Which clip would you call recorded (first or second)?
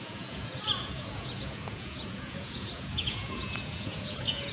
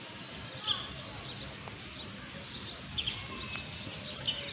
second